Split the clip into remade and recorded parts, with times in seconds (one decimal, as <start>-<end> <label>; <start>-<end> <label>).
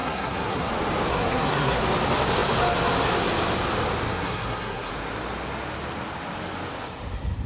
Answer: 0.0-0.7 remade; 0.7-1.1 recorded; 1.1-1.8 remade; 1.8-4.1 recorded; 4.1-4.9 remade; 4.9-7.5 recorded